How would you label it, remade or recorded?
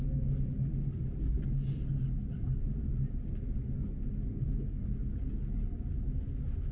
recorded